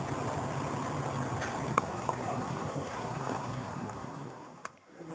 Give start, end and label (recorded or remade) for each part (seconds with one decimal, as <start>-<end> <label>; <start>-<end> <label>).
0.0-1.7 recorded; 1.7-5.1 remade